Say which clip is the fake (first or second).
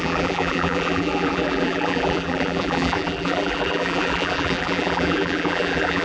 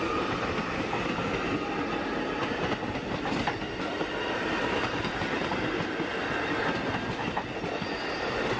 first